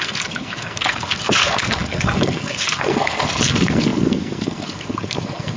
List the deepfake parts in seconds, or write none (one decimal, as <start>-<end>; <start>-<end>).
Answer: 0.0-5.6